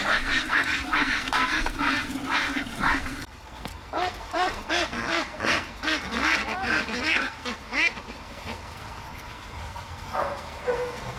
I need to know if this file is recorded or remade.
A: remade